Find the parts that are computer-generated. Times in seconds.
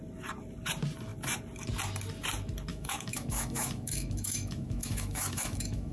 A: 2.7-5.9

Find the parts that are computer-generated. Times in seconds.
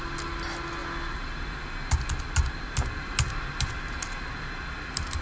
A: none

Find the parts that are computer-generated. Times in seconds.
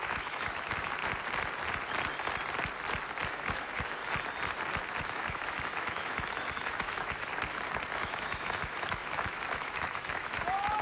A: 0.0-1.0; 3.3-4.0; 5.0-7.3; 8.0-10.8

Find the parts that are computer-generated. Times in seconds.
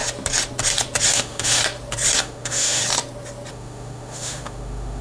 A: 1.1-1.6; 2.2-2.8; 3.5-5.0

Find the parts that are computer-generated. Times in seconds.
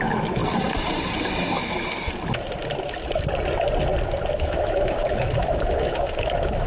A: 0.0-0.4; 4.3-6.7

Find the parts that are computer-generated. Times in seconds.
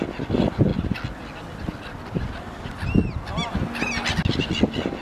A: none